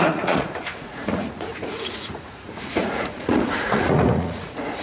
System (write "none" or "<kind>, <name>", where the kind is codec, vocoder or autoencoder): vocoder, Vocos